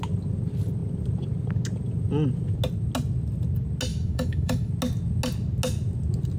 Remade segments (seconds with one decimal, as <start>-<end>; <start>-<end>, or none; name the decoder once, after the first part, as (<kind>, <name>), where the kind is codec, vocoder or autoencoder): 3.9-4.7 (autoencoder, DAC-VAE)